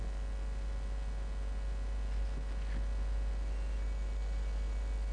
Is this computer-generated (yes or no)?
no